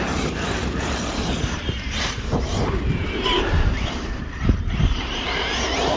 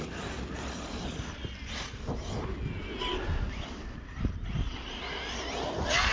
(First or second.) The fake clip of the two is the first